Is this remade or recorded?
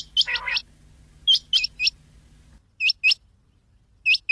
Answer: recorded